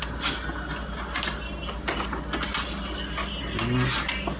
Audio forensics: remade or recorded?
recorded